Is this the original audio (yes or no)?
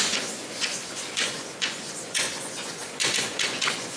no